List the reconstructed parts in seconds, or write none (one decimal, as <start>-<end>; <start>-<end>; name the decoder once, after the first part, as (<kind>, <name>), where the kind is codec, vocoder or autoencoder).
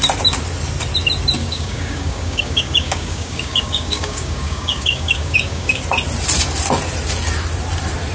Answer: 1.4-5.8 (codec, DAC)